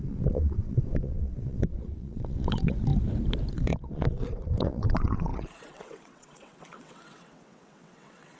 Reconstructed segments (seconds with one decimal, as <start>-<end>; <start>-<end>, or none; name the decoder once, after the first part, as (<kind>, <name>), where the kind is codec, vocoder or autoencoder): 0.0-2.9 (vocoder, WaveNeXt); 3.5-8.4